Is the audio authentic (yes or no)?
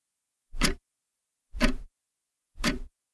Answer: no